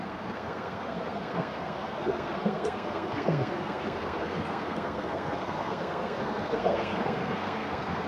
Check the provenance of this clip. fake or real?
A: fake